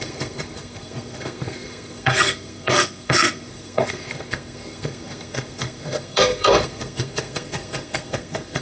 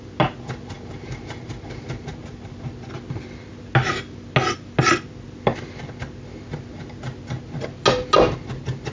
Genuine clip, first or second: second